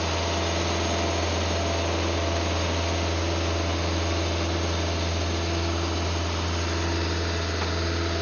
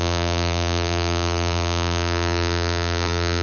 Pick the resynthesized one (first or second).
second